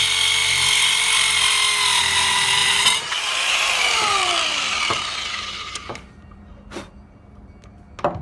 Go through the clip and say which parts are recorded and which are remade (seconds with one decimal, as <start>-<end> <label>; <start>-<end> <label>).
0.0-2.6 recorded; 2.6-6.5 remade; 6.5-8.2 recorded